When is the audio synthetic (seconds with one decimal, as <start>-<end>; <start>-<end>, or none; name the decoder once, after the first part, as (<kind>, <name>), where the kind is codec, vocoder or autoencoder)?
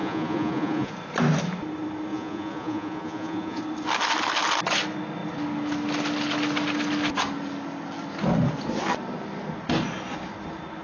0.0-0.9 (vocoder, Vocos); 2.1-3.6